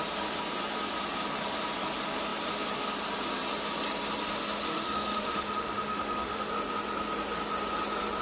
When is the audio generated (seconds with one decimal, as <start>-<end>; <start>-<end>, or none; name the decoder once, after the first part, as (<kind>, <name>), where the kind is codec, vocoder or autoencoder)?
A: 4.7-6.5 (autoencoder, DAC-VAE)